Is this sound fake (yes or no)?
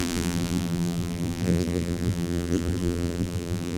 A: yes